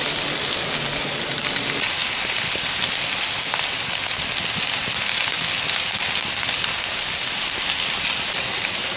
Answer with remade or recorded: recorded